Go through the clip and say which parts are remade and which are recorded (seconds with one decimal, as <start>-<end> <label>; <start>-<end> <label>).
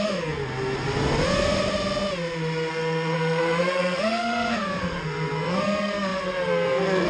0.0-0.4 remade; 0.4-2.7 recorded; 2.7-7.1 remade